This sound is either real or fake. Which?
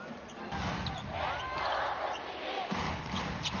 real